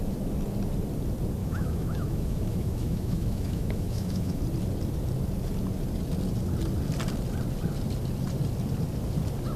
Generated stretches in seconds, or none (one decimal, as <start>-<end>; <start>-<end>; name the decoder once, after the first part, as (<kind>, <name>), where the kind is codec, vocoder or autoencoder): 1.4-4.4 (autoencoder, DAC-VAE)